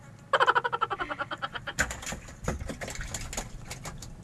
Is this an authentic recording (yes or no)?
yes